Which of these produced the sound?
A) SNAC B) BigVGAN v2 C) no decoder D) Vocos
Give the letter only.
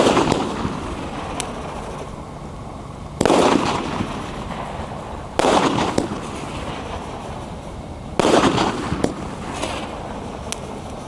C